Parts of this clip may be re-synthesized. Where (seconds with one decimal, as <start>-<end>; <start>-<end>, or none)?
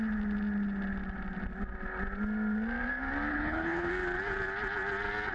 3.3-3.9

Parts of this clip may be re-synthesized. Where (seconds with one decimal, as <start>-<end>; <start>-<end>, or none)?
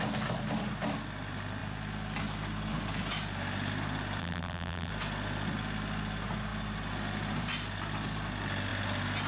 4.2-4.9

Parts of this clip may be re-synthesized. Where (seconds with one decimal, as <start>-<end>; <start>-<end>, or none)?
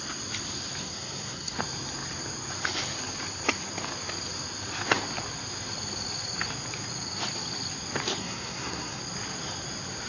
0.8-1.6; 8.2-9.0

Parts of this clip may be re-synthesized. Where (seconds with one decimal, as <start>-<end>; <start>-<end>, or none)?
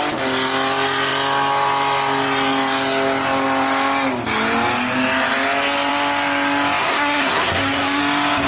6.8-8.0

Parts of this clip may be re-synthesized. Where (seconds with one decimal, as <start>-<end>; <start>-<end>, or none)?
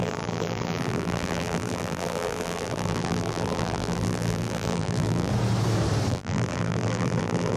0.0-5.3; 6.1-7.6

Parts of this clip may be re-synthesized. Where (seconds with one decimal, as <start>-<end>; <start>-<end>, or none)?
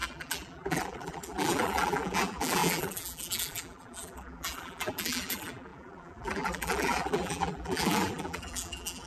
0.0-9.1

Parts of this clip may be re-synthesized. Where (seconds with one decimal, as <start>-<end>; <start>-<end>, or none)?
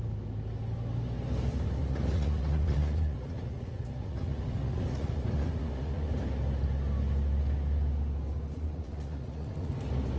1.8-6.1; 8.5-9.7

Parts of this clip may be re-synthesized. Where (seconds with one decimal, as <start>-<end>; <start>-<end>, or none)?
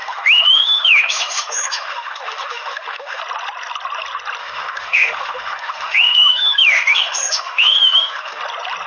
0.0-3.2; 4.4-8.4